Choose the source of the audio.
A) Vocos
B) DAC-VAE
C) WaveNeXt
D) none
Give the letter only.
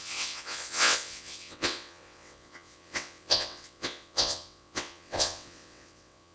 C